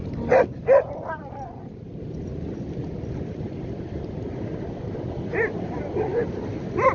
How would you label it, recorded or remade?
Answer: recorded